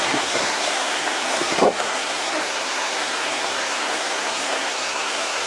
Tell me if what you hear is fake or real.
fake